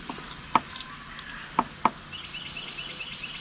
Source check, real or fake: real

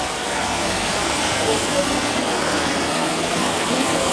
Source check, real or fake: fake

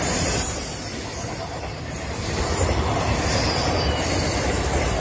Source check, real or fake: real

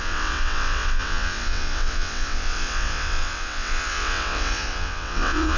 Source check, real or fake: fake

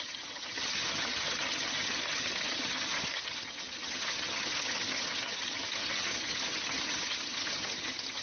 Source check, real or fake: fake